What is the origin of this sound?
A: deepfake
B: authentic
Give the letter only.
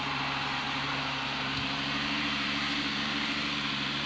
A